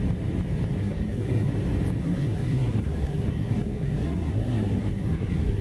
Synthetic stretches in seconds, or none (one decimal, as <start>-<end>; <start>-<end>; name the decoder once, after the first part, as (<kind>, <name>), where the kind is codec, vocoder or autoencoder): 0.8-1.5 (codec, SNAC); 2.0-5.6

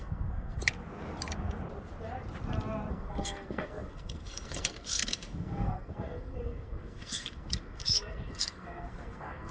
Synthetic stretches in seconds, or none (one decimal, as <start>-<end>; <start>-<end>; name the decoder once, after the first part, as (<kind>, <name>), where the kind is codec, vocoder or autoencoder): 0.0-0.6 (codec, SNAC); 2.9-9.5